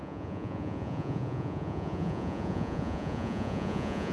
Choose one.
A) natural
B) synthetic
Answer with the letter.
B